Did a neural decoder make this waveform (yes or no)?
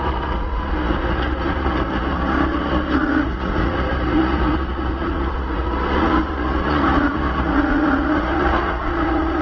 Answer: yes